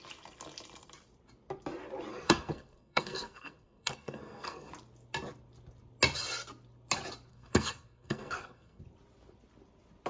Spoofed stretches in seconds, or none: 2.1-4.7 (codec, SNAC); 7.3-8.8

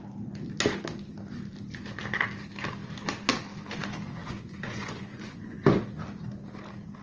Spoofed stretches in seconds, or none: 4.2-5.8 (vocoder, Vocos)